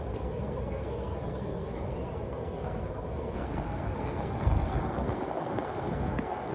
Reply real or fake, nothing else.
fake